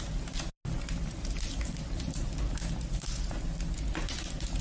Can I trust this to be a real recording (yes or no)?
yes